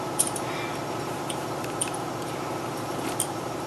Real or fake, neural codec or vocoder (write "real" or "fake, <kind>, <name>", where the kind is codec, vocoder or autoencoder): fake, vocoder, BigVGAN v2